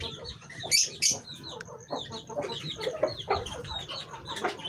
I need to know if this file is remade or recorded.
recorded